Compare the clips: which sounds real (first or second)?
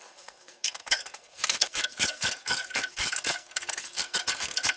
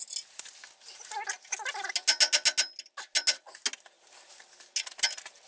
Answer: second